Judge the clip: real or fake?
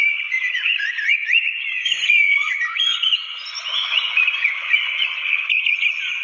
fake